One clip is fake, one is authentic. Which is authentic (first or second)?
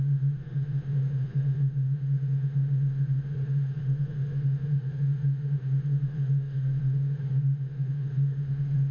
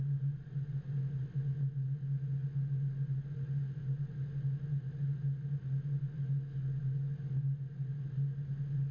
second